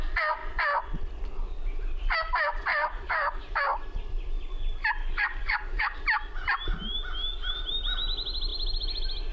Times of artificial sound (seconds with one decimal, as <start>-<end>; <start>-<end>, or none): 2.7-3.4; 5.0-6.0